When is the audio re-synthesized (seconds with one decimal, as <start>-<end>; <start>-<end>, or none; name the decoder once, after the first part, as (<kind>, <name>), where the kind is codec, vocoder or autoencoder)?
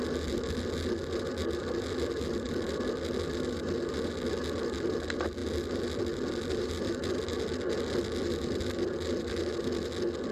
none